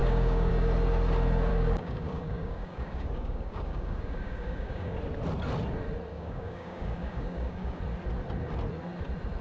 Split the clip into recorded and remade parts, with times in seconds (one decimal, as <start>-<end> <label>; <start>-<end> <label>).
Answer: 0.0-0.5 remade; 0.5-1.5 recorded; 1.5-5.0 remade; 5.0-6.1 recorded; 6.1-7.8 remade; 7.8-9.4 recorded